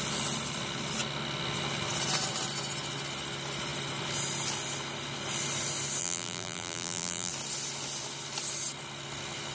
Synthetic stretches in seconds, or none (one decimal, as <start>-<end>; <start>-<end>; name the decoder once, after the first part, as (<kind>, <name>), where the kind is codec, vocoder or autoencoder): 6.0-7.3 (vocoder, BigVGAN v2)